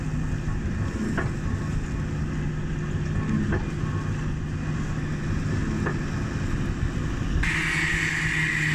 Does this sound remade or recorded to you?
recorded